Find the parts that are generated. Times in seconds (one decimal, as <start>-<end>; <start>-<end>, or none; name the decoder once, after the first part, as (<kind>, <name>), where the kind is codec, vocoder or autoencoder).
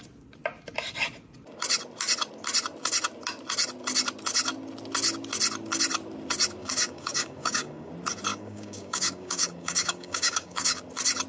6.6-7.9 (codec, DAC); 8.3-10.8